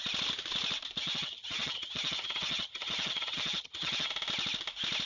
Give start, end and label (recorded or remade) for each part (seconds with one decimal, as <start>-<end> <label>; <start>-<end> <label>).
0.0-1.0 recorded; 1.0-4.1 remade; 4.1-5.1 recorded